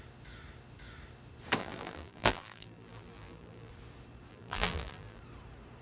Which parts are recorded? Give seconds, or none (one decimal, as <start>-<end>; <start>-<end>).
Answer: 0.0-1.6; 3.7-4.3; 5.2-5.8